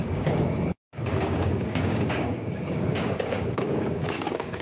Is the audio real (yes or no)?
no